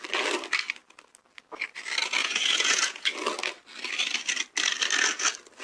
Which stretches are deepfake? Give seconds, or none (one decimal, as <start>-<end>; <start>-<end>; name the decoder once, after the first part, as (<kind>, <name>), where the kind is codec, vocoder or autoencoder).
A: 2.2-3.1 (vocoder, Vocos)